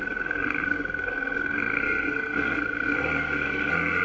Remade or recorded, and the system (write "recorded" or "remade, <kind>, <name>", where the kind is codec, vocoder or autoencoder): remade, codec, SNAC